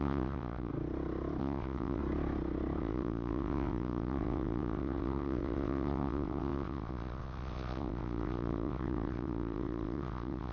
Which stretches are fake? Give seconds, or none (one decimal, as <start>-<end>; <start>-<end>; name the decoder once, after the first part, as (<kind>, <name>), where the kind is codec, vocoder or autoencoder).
0.0-0.7 (vocoder, WaveNeXt); 1.4-2.0; 2.8-10.5